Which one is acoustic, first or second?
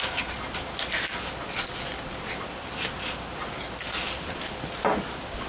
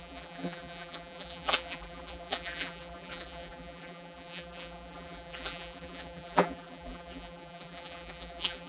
first